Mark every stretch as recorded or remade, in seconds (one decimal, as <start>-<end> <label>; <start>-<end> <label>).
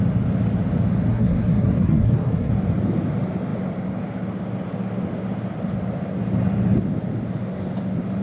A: 0.0-1.1 recorded; 1.1-2.5 remade; 2.5-8.2 recorded